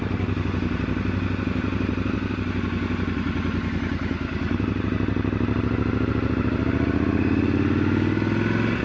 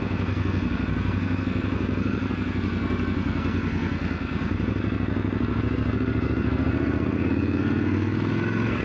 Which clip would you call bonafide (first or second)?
first